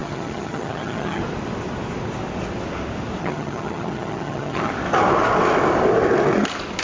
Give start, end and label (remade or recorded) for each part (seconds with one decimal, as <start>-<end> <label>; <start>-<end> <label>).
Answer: 0.0-1.2 remade; 1.2-3.2 recorded; 3.2-4.7 remade; 4.7-6.8 recorded